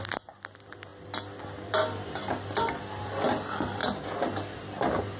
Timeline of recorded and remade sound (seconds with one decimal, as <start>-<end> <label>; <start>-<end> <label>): 0.0-5.2 recorded